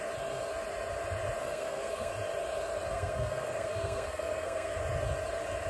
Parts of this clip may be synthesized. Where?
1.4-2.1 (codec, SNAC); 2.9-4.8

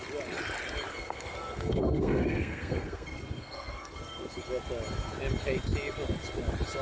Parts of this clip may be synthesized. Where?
0.9-4.4 (codec, SNAC)

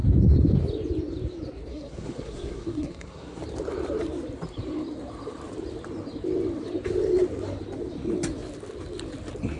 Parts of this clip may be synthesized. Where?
1.7-3.4 (codec, SNAC)

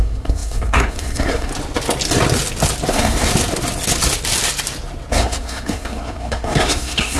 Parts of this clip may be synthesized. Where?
0.0-1.5 (codec, SNAC); 2.9-3.3; 5.1-7.2

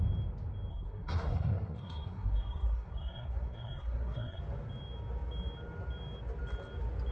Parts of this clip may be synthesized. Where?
0.7-4.4 (codec, SNAC)

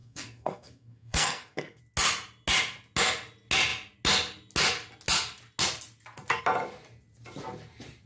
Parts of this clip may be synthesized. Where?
0.0-1.8 (codec, SNAC)

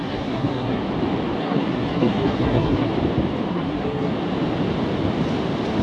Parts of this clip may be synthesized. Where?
0.0-0.8 (codec, SNAC); 1.4-2.9; 3.5-4.1